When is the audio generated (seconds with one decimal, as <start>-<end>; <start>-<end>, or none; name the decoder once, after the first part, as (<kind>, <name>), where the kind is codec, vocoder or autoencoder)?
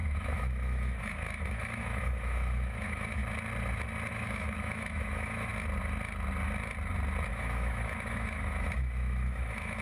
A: 0.0-3.2 (autoencoder, DAC-VAE); 4.1-5.5; 7.3-9.8